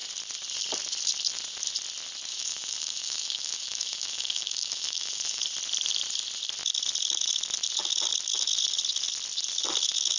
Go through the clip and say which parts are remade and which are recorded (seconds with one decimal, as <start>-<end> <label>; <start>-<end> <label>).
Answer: 0.0-2.3 recorded; 2.3-5.4 remade; 5.4-10.2 recorded